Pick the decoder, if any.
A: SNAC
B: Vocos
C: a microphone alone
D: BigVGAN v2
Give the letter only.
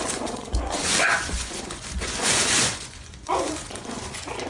B